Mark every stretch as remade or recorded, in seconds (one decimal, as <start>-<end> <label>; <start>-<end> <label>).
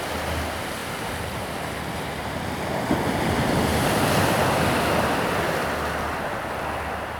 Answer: 0.0-0.8 recorded; 0.8-4.1 remade; 4.1-7.2 recorded